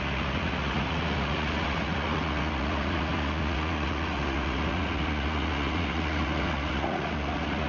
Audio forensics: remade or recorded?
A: remade